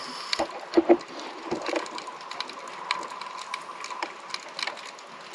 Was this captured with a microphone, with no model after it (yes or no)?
yes